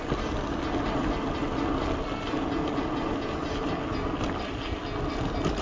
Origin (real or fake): real